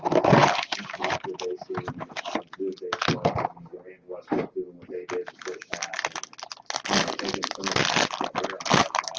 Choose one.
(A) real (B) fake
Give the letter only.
A